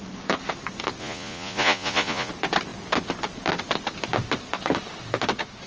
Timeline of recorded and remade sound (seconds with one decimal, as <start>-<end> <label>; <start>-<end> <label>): 0.0-1.0 recorded; 1.0-2.3 remade; 2.3-5.7 recorded